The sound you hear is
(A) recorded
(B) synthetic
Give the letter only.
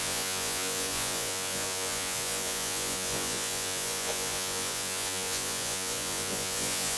B